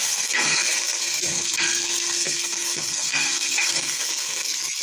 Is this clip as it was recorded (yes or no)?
no